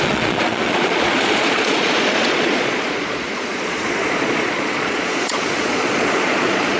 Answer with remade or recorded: remade